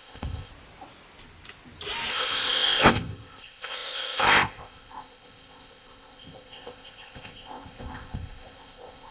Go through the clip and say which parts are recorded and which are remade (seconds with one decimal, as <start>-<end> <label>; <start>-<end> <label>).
0.0-0.5 remade; 0.5-2.1 recorded; 2.1-9.1 remade